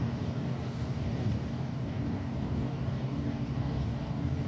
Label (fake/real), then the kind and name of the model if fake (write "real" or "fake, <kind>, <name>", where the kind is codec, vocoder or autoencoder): fake, codec, DAC